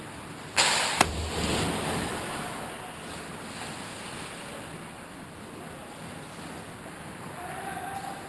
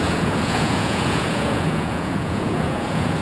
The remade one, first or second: second